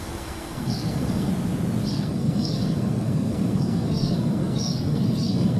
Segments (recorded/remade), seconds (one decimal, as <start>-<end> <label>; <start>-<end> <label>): 0.0-1.3 remade; 1.3-1.9 recorded; 1.9-5.6 remade